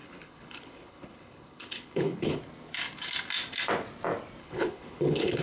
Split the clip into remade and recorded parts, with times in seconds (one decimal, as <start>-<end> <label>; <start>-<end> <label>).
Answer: 0.0-2.4 remade; 2.4-4.4 recorded; 4.4-5.4 remade

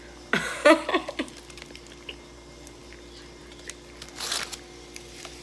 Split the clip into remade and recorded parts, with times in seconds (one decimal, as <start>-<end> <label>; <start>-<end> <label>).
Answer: 0.0-5.4 recorded

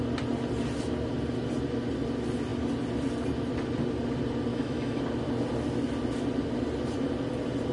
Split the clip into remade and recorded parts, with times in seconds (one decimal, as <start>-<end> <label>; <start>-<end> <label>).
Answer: 0.0-4.5 recorded; 4.5-5.0 remade; 5.0-7.7 recorded

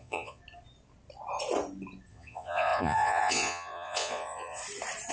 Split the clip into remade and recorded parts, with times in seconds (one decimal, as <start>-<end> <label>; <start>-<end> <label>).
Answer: 0.0-0.4 remade; 0.4-2.1 recorded; 2.1-4.6 remade; 4.6-5.1 recorded

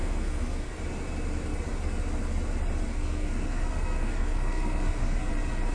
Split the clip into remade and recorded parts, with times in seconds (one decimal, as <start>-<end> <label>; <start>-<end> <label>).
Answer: 0.0-0.8 remade; 0.8-2.9 recorded; 2.9-5.3 remade; 5.3-5.7 recorded